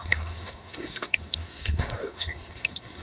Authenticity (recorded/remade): remade